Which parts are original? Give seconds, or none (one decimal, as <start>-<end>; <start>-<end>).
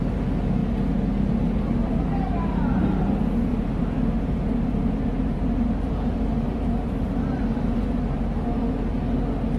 0.0-1.8; 3.1-3.5; 8.6-9.6